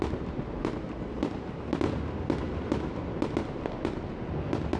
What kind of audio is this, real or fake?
real